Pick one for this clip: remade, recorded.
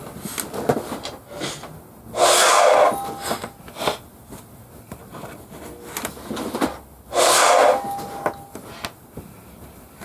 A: recorded